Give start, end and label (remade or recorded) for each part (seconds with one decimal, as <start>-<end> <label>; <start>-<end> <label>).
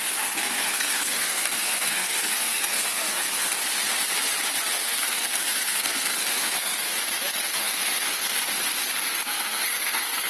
0.0-3.6 remade; 3.6-4.7 recorded; 4.7-6.9 remade; 6.9-7.5 recorded; 7.5-8.4 remade; 8.4-9.1 recorded; 9.1-10.3 remade